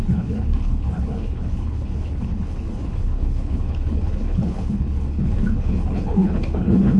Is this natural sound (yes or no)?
no